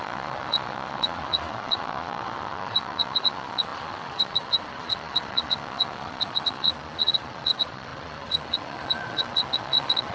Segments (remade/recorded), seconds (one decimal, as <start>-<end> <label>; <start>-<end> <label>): 0.0-10.1 remade